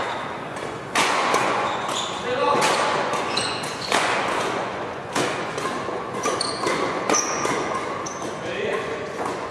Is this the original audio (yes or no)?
no